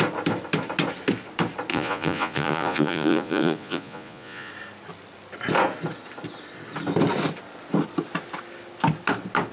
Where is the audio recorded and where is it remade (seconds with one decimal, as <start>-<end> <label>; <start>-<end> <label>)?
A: 0.0-1.7 recorded; 1.7-4.5 remade; 4.5-9.5 recorded